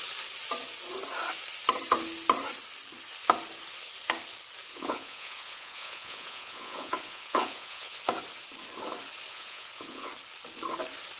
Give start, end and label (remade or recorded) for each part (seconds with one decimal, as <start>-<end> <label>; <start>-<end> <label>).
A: 0.0-4.7 recorded; 4.7-8.0 remade; 8.0-9.3 recorded; 9.3-10.1 remade; 10.1-11.2 recorded